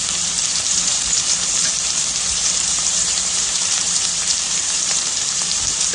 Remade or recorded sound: remade